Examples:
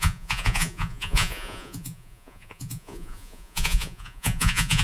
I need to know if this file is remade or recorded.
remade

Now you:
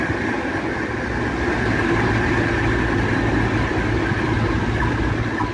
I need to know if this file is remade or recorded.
recorded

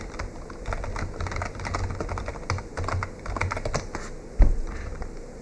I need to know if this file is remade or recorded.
recorded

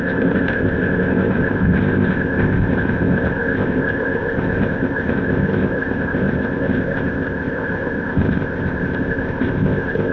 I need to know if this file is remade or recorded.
remade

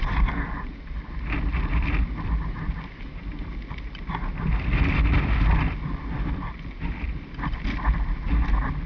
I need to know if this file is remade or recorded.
recorded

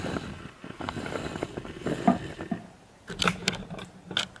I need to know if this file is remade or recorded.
recorded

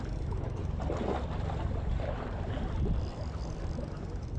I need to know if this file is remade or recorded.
recorded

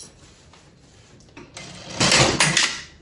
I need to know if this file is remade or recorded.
recorded